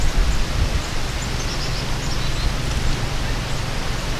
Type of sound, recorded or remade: recorded